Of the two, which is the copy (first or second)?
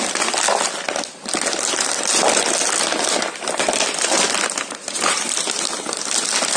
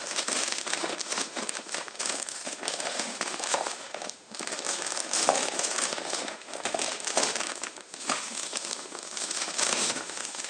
second